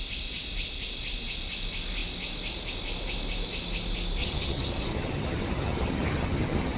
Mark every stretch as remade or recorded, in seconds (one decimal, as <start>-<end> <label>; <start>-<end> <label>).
0.0-4.2 recorded; 4.2-6.8 remade